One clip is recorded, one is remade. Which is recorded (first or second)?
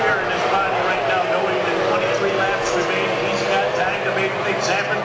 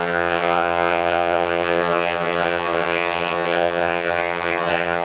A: first